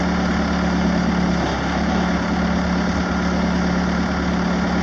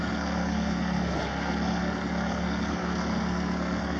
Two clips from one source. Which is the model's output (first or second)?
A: second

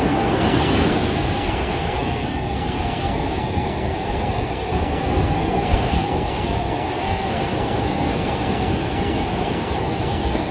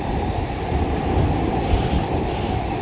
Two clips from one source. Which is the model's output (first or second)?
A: first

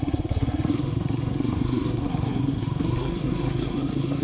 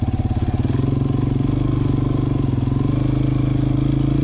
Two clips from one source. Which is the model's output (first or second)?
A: first